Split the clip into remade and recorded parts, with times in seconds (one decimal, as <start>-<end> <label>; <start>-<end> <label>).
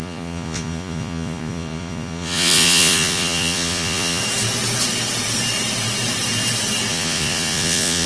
0.0-4.2 remade; 4.2-6.9 recorded; 6.9-8.1 remade